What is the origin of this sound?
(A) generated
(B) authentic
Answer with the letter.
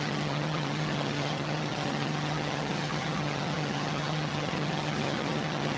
A